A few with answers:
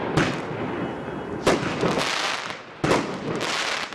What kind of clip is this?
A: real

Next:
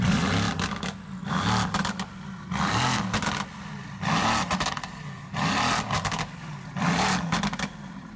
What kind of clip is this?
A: real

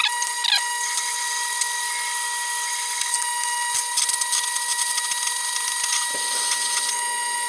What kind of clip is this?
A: real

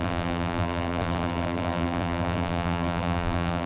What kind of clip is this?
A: fake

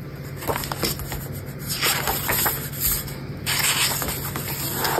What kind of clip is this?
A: real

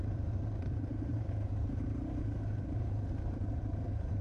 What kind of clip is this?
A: fake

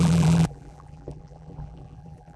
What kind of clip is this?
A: fake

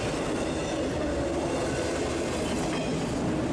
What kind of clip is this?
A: real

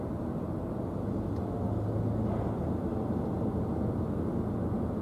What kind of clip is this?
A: real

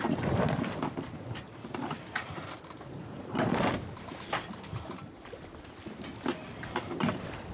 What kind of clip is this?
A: real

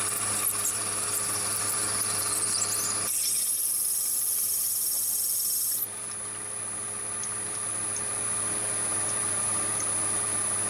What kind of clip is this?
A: real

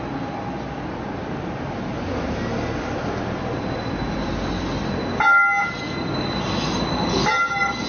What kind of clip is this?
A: real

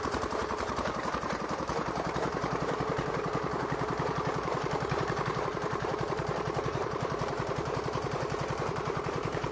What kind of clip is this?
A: fake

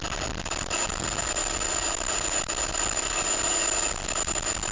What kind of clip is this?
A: real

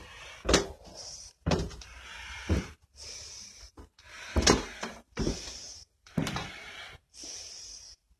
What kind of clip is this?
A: fake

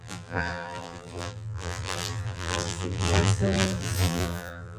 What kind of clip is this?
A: fake